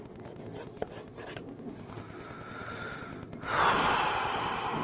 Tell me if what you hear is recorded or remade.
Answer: recorded